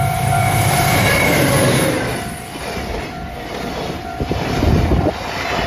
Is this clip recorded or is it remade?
remade